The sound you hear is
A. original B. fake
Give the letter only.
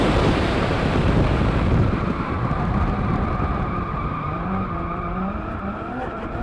B